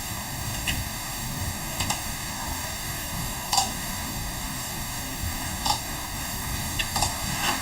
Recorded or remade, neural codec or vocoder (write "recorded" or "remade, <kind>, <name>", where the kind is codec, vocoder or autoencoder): remade, codec, DAC